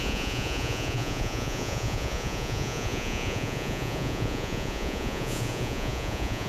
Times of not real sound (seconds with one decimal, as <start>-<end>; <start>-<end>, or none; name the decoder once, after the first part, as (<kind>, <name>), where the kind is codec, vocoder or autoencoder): 0.0-6.5 (vocoder, Vocos)